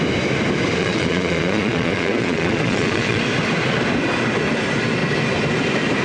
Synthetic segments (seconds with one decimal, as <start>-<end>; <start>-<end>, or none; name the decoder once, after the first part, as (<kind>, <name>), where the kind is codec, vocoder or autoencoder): 0.8-3.2 (vocoder, Vocos)